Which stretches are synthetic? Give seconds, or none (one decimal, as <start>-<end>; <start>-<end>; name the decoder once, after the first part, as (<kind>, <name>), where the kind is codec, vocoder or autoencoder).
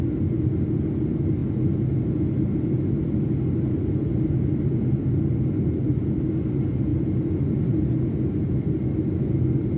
4.0-6.3 (vocoder, BigVGAN v2)